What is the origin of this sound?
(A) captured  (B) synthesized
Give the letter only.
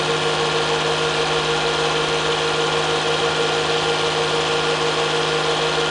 A